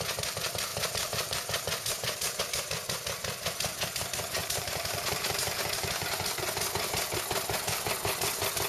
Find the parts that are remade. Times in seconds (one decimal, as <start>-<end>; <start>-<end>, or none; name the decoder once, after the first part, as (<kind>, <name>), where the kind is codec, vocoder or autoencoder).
0.7-2.4 (vocoder, BigVGAN v2); 4.4-5.4